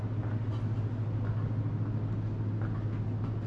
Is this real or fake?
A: real